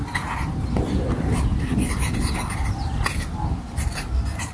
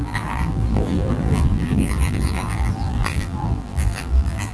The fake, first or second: second